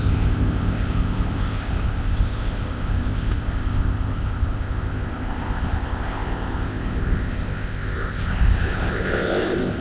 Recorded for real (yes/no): no